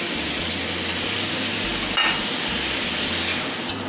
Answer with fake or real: real